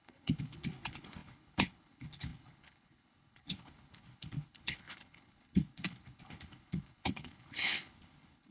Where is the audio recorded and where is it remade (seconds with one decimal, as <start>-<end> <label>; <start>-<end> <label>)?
0.0-8.5 remade